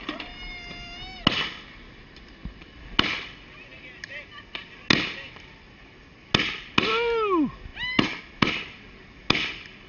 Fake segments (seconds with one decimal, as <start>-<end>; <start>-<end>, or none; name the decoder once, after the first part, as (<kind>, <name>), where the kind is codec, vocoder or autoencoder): none